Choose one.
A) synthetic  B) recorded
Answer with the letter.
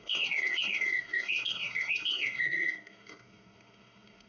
A